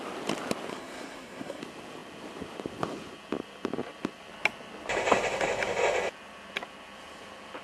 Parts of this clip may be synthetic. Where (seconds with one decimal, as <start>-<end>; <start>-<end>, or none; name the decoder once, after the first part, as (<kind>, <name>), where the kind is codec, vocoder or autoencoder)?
0.7-1.6 (codec, SNAC)